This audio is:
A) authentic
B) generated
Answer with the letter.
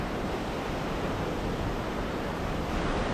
A